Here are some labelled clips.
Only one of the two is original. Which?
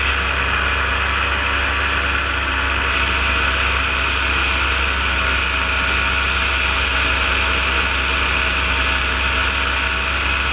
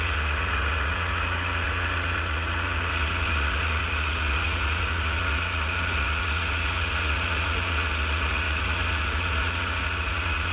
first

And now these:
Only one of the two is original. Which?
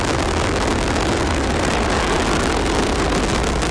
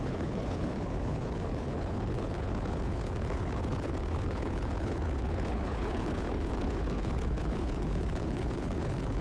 first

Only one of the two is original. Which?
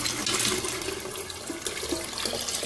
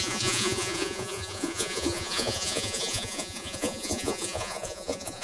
first